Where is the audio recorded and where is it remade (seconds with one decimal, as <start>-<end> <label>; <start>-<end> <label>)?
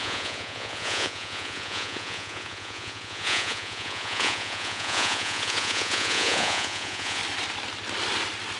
0.0-7.2 remade; 7.2-8.6 recorded